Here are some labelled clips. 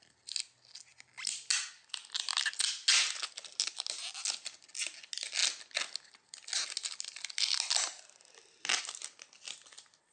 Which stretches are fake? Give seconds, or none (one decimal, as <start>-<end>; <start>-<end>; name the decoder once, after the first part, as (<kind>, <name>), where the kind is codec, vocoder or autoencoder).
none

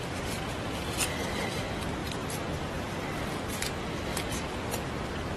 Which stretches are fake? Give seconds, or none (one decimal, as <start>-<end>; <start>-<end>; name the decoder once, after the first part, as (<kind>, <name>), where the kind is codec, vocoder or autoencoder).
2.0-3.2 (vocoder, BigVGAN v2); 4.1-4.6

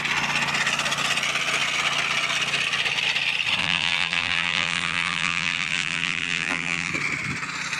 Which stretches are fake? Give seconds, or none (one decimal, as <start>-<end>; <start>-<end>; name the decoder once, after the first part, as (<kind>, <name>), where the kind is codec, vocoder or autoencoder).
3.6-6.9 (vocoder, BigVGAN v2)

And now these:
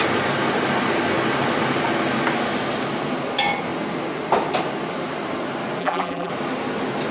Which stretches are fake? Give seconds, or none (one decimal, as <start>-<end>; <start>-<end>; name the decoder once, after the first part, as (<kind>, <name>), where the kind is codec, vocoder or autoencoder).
5.8-6.3 (vocoder, BigVGAN v2)